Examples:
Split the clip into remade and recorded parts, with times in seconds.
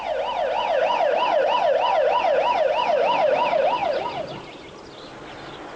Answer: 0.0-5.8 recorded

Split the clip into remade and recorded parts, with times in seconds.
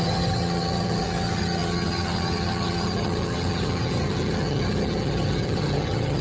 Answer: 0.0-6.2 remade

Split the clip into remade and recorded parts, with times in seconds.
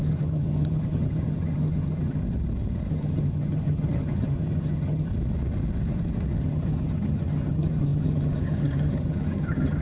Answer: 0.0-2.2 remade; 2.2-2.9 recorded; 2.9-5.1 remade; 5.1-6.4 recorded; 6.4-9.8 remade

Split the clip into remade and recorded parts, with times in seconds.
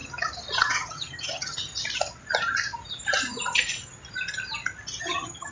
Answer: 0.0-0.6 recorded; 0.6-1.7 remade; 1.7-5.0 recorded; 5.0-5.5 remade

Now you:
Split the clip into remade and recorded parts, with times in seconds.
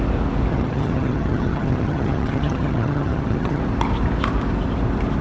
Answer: 0.0-0.5 recorded; 0.5-3.6 remade; 3.6-5.2 recorded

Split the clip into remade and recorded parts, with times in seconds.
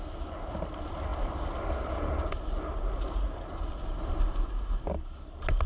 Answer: 0.0-5.7 recorded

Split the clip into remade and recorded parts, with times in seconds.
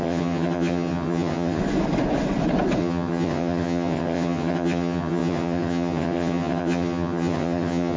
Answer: 0.0-1.6 remade; 1.6-2.8 recorded; 2.8-8.0 remade